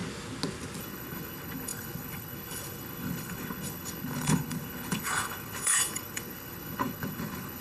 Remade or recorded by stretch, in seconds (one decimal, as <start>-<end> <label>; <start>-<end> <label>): 0.0-0.8 recorded; 0.8-7.6 remade